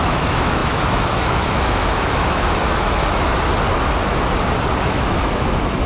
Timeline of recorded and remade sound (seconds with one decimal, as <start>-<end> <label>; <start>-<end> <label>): 0.0-3.0 remade; 3.0-4.8 recorded; 4.8-5.9 remade

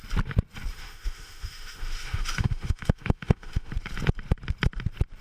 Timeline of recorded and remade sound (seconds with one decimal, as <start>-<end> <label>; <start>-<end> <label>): 0.0-0.7 recorded; 0.7-3.7 remade; 3.7-5.2 recorded

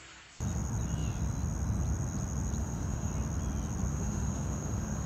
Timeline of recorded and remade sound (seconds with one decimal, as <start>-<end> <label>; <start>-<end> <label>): 0.0-2.6 recorded; 2.6-3.1 remade; 3.1-3.9 recorded; 3.9-5.1 remade

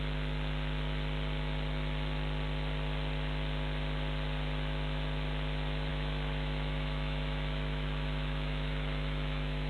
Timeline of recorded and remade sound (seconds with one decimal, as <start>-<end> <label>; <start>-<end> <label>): 0.0-5.9 recorded; 5.9-9.7 remade

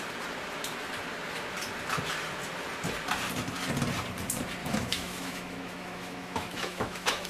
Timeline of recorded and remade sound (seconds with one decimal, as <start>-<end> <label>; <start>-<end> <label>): 0.0-4.6 recorded; 4.6-7.3 remade

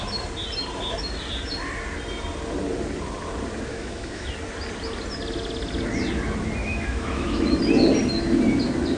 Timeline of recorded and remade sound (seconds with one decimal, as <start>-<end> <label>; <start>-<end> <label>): 0.0-3.7 recorded; 3.7-4.3 remade; 4.3-6.6 recorded; 6.6-7.6 remade; 7.6-9.0 recorded